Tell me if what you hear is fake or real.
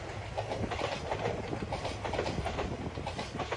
real